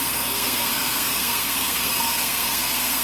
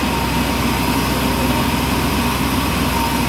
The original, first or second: second